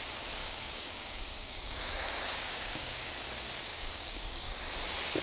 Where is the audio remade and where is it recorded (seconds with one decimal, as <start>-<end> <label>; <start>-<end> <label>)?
0.0-0.4 recorded; 0.4-3.2 remade; 3.2-3.7 recorded; 3.7-4.6 remade; 4.6-5.2 recorded